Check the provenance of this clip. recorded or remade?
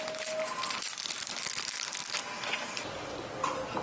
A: recorded